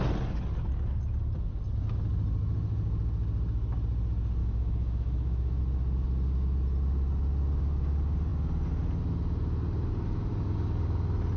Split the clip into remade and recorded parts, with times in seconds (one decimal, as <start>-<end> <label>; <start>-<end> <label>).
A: 0.0-4.4 recorded; 4.4-5.6 remade; 5.6-11.4 recorded

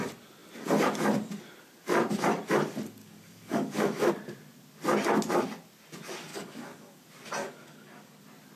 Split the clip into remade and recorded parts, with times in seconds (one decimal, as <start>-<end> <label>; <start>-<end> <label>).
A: 0.0-3.0 recorded; 3.0-4.1 remade; 4.1-6.3 recorded; 6.3-7.0 remade; 7.0-7.4 recorded; 7.4-8.2 remade; 8.2-8.6 recorded